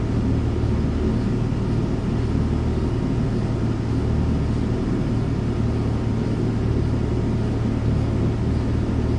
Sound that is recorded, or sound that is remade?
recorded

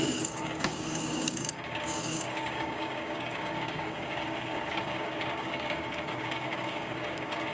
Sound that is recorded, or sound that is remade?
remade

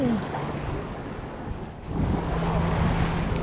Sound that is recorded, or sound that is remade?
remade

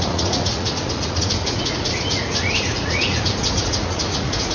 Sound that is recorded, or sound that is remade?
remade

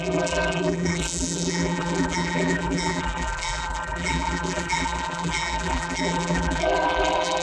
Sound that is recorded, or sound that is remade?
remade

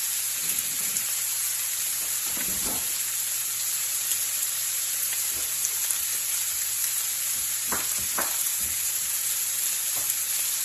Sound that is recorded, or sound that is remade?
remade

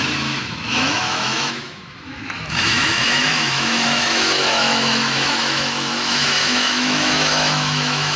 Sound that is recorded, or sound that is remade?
remade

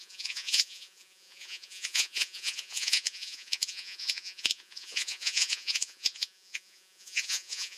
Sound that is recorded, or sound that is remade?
remade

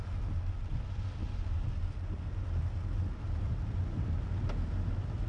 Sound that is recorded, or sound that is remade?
recorded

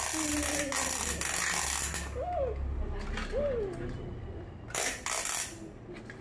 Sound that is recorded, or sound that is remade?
recorded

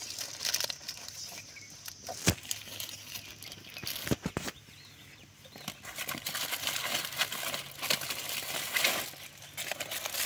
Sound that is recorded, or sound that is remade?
recorded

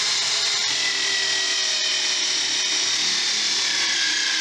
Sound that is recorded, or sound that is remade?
recorded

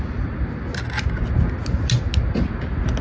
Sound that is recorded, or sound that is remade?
recorded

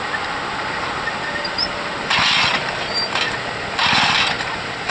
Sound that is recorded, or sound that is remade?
recorded